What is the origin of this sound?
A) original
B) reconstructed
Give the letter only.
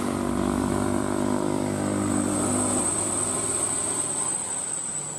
B